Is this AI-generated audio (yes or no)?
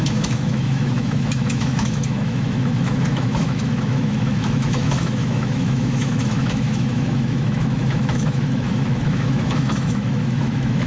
yes